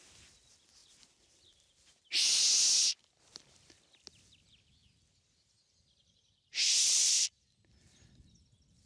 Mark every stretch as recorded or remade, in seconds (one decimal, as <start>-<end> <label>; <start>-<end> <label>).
0.0-8.9 recorded